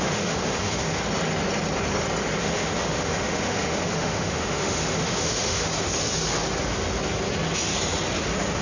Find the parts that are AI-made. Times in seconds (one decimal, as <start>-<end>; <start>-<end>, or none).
0.0-1.0; 2.4-5.7